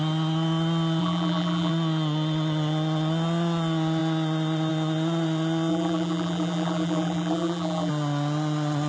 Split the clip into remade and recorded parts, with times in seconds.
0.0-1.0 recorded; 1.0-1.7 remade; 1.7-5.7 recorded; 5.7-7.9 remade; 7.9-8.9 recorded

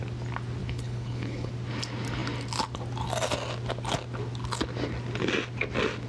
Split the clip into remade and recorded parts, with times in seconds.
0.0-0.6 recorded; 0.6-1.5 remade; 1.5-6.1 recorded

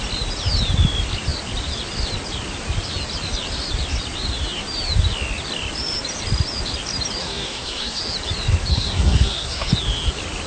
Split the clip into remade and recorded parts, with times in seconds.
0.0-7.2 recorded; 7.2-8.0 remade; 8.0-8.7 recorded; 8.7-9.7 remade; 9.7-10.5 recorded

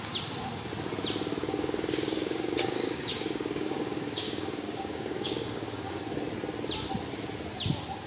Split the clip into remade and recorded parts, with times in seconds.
0.0-1.4 recorded; 1.4-6.0 remade; 6.0-8.1 recorded

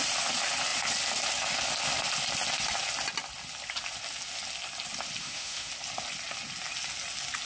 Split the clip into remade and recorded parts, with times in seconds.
0.0-5.2 recorded; 5.2-5.7 remade; 5.7-7.5 recorded

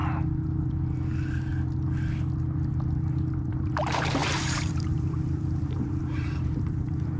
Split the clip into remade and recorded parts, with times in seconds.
0.0-3.5 recorded; 3.5-7.2 remade